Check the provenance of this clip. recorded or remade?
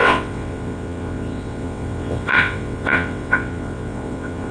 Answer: remade